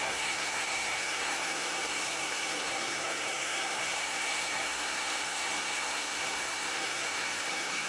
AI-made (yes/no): yes